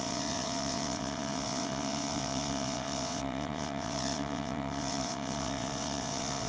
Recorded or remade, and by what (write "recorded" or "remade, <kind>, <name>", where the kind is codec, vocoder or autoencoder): remade, vocoder, WaveNeXt